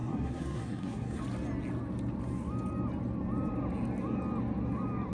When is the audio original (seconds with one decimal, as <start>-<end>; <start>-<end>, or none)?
1.2-5.1